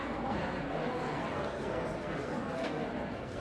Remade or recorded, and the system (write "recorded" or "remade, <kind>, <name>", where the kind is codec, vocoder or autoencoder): remade, codec, SNAC